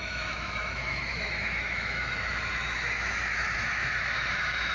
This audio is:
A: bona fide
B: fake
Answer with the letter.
B